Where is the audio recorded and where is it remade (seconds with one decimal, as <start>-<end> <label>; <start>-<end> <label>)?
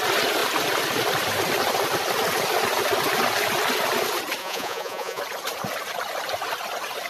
0.0-4.4 recorded; 4.4-5.2 remade; 5.2-7.1 recorded